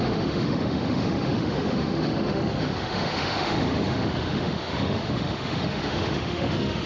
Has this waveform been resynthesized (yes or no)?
yes